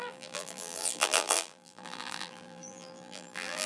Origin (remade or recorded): remade